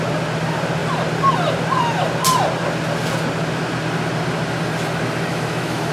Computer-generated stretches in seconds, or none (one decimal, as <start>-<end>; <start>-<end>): 5.3-5.9